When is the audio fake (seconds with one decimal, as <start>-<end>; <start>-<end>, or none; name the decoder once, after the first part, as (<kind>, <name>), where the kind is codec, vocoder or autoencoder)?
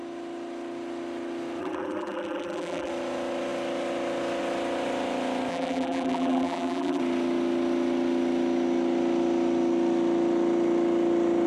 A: 1.6-2.9 (vocoder, BigVGAN v2); 5.5-7.0